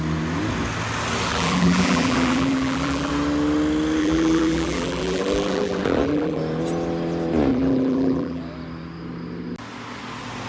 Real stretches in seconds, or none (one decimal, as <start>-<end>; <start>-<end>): 0.0-1.3; 3.1-4.0; 6.4-7.5; 8.4-10.5